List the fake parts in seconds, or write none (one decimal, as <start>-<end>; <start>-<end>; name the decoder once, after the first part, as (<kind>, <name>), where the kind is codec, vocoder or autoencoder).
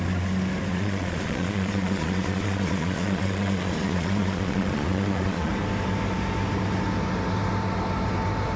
0.7-5.5 (vocoder, Vocos)